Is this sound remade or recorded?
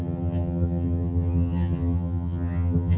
remade